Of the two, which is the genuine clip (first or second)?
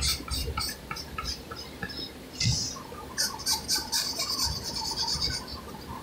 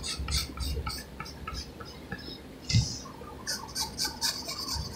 second